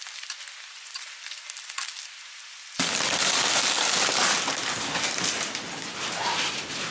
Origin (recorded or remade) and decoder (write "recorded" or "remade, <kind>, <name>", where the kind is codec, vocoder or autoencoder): recorded